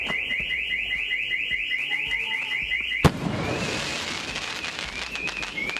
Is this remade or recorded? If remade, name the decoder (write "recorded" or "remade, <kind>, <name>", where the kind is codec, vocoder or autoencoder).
recorded